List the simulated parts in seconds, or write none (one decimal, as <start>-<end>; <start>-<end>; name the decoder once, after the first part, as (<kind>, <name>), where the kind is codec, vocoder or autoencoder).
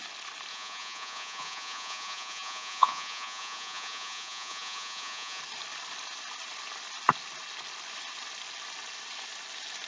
0.5-5.4 (vocoder, Vocos)